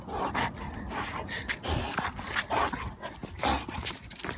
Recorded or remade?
recorded